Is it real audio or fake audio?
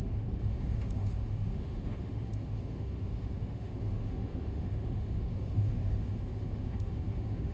fake